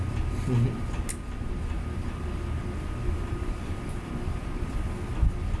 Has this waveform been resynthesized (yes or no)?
no